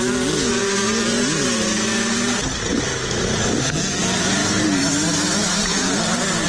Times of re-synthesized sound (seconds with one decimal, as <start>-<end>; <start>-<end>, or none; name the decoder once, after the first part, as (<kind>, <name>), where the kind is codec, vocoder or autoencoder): 4.4-5.9 (vocoder, BigVGAN v2)